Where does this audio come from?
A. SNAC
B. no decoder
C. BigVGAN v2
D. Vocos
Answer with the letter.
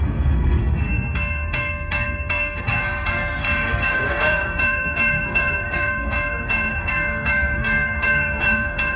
A